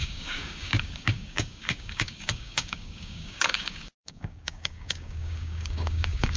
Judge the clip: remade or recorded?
remade